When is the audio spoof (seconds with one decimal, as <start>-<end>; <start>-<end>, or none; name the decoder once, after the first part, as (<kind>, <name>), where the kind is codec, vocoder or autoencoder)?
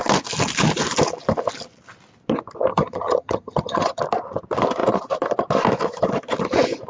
2.7-4.0 (vocoder, HiFi-GAN)